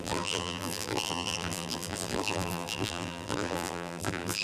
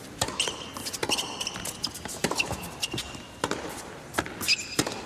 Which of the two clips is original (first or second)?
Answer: second